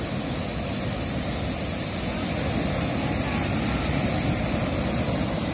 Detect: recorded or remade recorded